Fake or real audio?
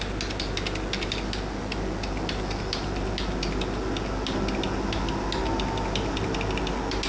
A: real